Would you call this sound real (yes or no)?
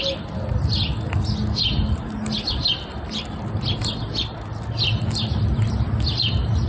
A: yes